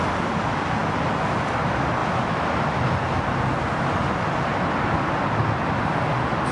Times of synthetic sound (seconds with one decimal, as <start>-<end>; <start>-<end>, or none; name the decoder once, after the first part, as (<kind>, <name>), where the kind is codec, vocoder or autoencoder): none

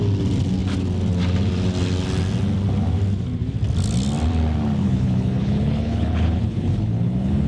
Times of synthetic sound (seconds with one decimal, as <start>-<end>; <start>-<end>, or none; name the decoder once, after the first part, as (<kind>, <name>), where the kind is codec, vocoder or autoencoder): 4.8-7.5 (codec, HILCodec)

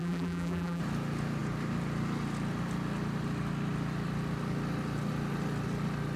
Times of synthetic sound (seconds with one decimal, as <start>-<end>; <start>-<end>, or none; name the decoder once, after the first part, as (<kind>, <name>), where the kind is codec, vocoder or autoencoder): 0.0-0.8 (vocoder, BigVGAN v2)

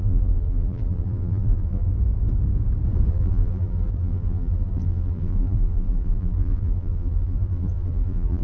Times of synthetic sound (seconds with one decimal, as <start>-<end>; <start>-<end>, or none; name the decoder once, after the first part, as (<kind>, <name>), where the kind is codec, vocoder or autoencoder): 0.0-1.9 (vocoder, BigVGAN v2); 3.1-8.4